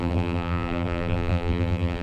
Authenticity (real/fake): fake